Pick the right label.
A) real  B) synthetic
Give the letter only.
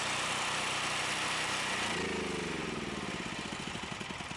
A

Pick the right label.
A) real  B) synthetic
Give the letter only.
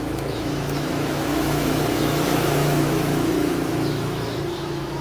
B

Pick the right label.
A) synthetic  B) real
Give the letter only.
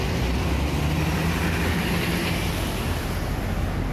B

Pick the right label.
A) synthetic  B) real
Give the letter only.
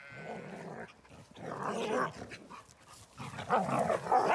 B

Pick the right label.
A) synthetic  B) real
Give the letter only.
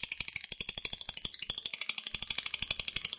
B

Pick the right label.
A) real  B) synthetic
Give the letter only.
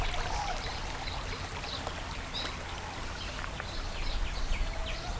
A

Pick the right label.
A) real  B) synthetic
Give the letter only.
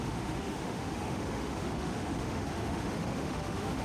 B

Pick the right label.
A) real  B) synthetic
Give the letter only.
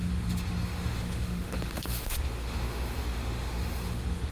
B